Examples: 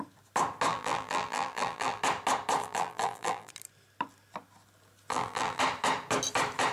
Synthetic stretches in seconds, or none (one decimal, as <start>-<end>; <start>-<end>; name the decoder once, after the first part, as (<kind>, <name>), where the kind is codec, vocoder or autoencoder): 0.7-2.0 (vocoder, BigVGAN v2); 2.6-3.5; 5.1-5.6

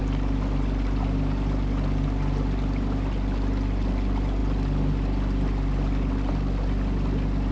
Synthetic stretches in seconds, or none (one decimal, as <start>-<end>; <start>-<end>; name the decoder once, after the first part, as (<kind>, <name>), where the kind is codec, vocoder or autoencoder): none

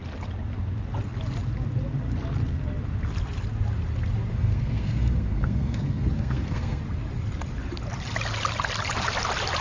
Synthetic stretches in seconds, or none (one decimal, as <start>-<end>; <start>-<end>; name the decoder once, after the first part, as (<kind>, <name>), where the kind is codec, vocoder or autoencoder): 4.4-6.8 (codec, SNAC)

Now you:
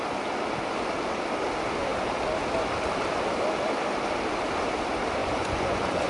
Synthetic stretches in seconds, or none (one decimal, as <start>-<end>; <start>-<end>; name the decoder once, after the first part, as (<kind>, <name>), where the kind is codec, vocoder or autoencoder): 5.2-6.1 (vocoder, Vocos)

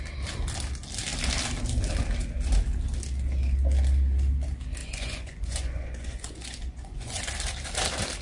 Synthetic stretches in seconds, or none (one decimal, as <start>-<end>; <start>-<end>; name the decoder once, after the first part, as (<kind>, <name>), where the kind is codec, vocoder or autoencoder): 4.8-7.3 (vocoder, Vocos)

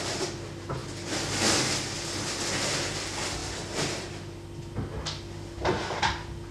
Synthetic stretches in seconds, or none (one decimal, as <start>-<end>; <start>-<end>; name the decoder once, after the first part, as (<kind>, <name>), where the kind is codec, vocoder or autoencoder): none

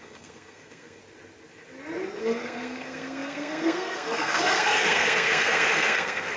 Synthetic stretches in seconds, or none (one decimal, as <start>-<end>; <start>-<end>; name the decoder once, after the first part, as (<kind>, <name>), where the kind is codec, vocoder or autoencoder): 0.0-1.0 (codec, SNAC); 2.2-6.4